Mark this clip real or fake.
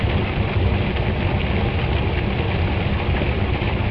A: real